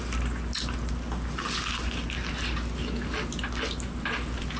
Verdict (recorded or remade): recorded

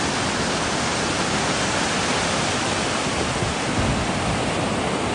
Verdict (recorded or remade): recorded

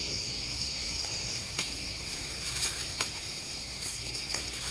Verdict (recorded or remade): remade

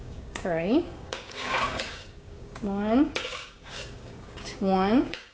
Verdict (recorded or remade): remade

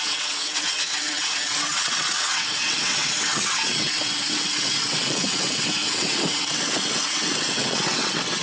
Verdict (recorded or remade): remade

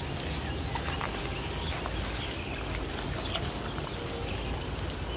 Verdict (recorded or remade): recorded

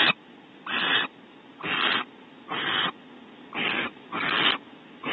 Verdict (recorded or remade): recorded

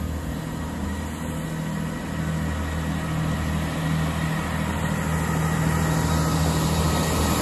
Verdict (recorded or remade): recorded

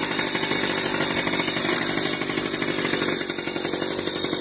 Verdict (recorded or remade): recorded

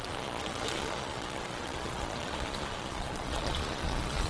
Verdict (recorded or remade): remade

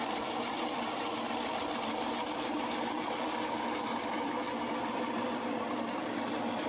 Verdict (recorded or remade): remade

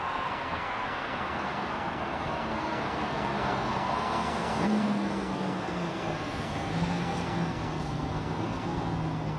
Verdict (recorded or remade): remade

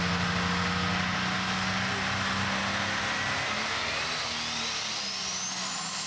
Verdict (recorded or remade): recorded